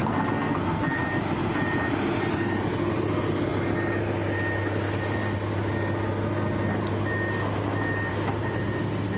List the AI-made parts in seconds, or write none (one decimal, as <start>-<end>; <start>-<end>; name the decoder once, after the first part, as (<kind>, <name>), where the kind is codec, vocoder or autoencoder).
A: 0.0-1.0 (codec, SNAC)